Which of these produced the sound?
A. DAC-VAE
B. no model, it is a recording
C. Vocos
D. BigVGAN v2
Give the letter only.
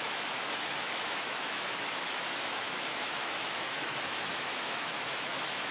A